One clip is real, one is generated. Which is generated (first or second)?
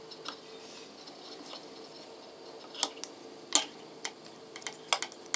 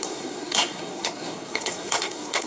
second